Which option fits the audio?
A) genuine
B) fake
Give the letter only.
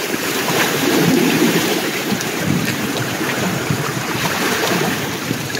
B